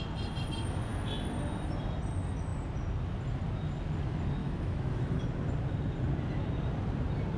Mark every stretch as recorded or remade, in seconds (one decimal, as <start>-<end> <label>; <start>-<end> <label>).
0.0-4.4 recorded; 4.4-5.2 remade; 5.2-7.4 recorded